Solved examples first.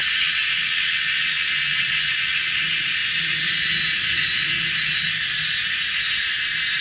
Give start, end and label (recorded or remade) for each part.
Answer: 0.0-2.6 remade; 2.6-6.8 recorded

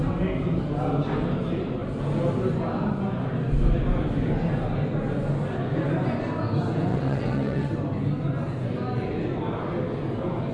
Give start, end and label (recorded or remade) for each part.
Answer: 0.0-6.9 recorded; 6.9-7.7 remade; 7.7-10.5 recorded

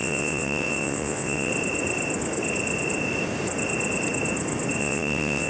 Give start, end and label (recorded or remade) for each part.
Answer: 0.0-1.5 remade; 1.5-4.8 recorded; 4.8-5.5 remade

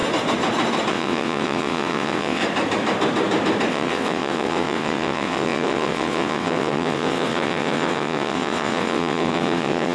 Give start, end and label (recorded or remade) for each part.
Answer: 0.0-0.9 recorded; 0.9-2.4 remade; 2.4-3.7 recorded; 3.7-9.9 remade

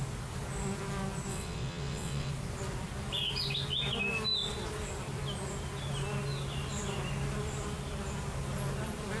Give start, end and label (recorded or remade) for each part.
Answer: 0.0-1.3 recorded; 1.3-2.3 remade; 2.3-9.2 recorded

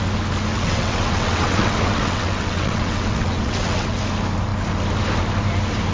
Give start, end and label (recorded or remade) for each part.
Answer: 0.0-0.5 recorded; 0.5-4.0 remade; 4.0-5.9 recorded

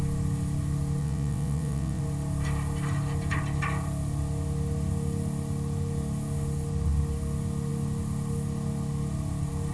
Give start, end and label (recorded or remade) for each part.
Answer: 0.0-1.0 recorded; 1.0-2.0 remade; 2.0-9.7 recorded

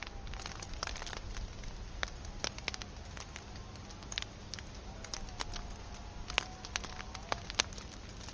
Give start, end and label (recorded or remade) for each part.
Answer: 0.0-8.3 recorded